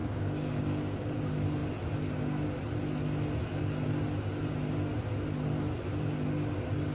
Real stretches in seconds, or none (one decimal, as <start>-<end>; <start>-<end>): 1.2-6.9